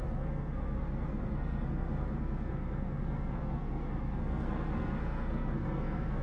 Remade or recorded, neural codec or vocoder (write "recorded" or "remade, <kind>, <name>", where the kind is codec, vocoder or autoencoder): remade, codec, SNAC